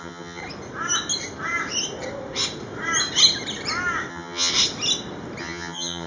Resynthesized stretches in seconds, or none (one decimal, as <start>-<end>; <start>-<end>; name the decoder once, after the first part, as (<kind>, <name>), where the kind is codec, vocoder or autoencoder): 0.0-0.4 (vocoder, HiFi-GAN); 4.1-4.5; 5.4-6.1